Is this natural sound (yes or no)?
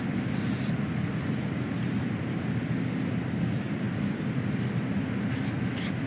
yes